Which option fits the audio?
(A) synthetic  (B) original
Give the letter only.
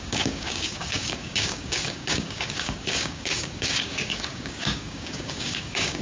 A